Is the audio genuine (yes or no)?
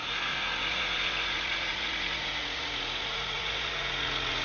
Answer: no